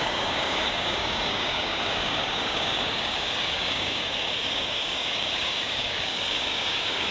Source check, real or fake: fake